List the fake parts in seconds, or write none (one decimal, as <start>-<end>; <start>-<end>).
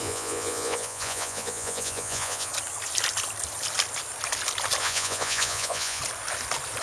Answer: 0.0-2.5; 4.8-6.0